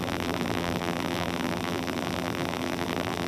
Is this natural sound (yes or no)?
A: no